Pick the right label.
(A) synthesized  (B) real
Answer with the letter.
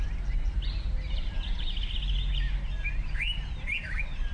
B